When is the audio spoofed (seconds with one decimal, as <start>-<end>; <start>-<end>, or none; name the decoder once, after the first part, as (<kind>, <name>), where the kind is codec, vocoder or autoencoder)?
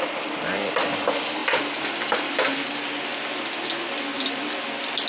none